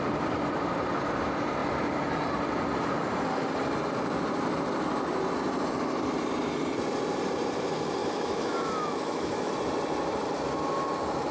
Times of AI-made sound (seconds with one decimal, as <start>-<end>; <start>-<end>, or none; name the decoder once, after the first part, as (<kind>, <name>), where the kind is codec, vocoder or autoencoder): 8.0-9.5 (autoencoder, DAC-VAE)